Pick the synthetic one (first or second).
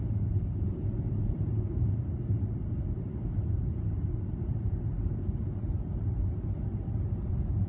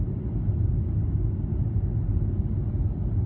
first